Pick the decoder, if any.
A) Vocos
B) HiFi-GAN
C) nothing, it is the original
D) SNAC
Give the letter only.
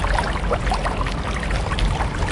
C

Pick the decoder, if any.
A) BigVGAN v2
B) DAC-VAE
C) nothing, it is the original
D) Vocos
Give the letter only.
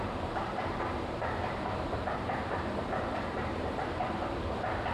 A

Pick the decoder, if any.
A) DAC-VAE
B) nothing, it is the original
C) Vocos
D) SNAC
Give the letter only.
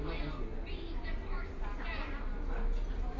B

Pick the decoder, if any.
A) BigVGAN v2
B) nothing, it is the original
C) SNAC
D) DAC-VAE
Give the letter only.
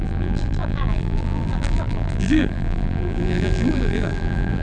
A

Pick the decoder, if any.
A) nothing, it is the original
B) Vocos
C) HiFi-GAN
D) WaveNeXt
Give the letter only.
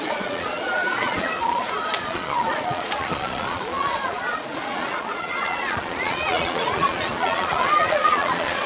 B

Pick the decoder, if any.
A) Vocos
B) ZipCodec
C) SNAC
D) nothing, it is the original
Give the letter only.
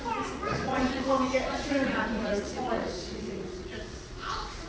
A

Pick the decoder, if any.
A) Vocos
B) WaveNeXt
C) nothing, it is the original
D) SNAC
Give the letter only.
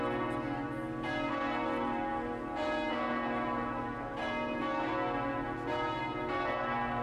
C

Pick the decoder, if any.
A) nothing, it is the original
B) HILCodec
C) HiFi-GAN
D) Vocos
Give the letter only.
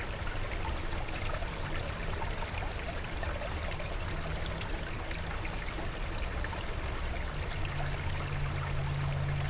A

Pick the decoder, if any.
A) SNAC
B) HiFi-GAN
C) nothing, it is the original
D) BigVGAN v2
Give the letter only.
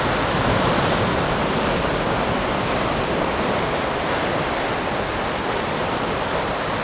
D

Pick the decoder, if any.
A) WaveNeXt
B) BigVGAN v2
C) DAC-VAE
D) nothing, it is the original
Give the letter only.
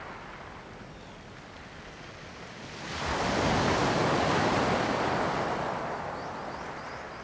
D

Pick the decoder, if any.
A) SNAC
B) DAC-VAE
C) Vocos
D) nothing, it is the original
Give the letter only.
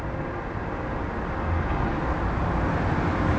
D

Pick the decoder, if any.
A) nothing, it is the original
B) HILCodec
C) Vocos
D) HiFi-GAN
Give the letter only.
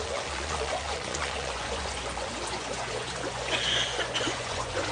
C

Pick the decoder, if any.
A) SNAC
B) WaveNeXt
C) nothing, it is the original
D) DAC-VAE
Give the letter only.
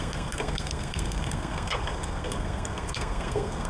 A